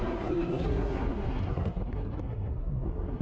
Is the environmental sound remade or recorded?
remade